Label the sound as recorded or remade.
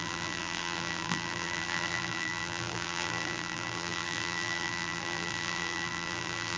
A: remade